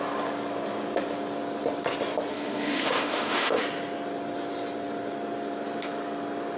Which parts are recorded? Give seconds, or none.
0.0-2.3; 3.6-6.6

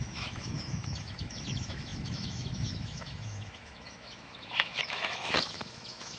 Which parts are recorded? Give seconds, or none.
none